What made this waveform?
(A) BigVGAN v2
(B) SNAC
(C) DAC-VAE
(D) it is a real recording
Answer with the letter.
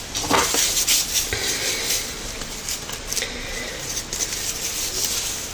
D